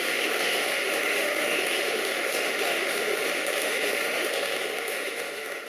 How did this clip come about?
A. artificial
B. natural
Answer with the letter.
A